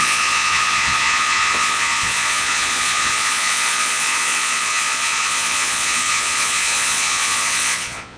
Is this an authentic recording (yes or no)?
no